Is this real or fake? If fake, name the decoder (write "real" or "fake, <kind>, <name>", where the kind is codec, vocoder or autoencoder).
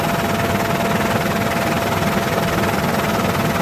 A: real